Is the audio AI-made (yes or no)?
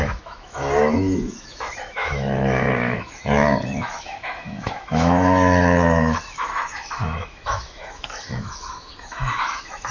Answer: yes